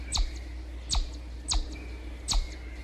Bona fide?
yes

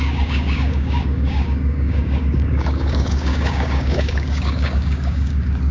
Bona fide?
no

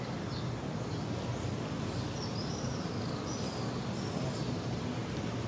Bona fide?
yes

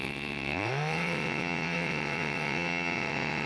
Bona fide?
no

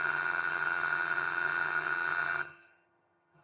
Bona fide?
no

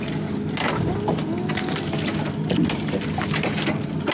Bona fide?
yes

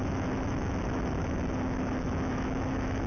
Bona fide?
no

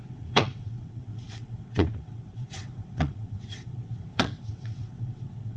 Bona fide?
no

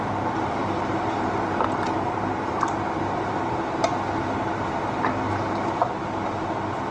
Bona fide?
yes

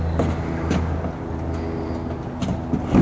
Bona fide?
yes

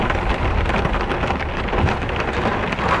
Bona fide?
yes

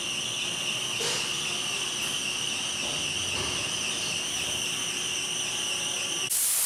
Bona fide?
yes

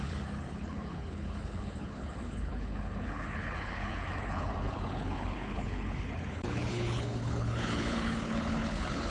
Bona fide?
no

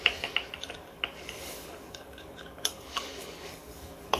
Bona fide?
no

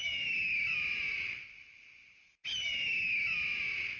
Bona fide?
yes